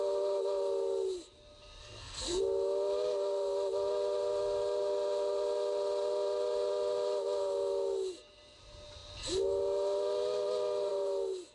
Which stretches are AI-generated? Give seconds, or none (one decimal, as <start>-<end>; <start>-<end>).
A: 1.8-2.4